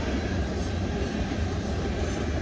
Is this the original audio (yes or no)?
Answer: yes